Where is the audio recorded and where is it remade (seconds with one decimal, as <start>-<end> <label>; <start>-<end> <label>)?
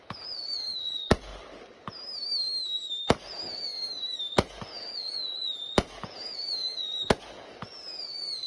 0.0-1.3 remade; 1.3-3.3 recorded; 3.3-3.7 remade; 3.7-4.3 recorded; 4.3-8.5 remade